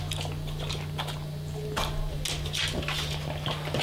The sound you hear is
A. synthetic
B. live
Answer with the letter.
B